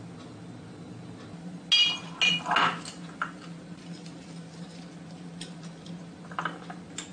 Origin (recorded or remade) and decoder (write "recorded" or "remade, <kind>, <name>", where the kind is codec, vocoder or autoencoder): recorded